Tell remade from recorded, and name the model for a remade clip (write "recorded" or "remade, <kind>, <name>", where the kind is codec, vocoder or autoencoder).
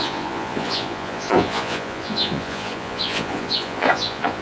remade, vocoder, Vocos